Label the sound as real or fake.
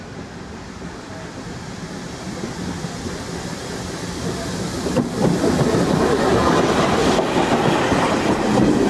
real